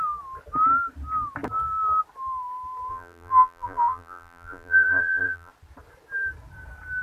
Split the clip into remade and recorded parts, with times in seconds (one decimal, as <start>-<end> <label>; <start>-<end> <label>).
0.0-2.9 recorded; 2.9-5.5 remade; 5.5-7.0 recorded